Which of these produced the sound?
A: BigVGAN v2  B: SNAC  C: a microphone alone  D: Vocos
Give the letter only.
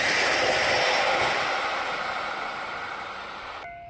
C